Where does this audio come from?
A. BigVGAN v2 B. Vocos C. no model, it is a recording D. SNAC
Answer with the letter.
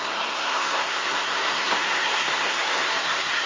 D